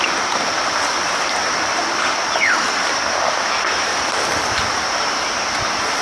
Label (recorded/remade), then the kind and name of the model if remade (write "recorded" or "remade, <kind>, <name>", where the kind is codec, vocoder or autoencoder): recorded